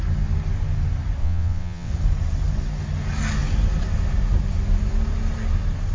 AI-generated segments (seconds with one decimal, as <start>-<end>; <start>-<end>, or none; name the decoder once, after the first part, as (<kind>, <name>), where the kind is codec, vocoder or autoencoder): 1.2-1.9 (vocoder, WaveNeXt)